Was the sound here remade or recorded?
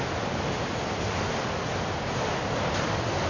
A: recorded